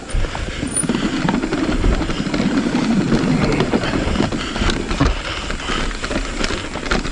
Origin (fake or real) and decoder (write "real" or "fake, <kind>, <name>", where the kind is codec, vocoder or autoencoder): real